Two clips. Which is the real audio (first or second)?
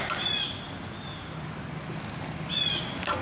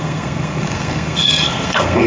first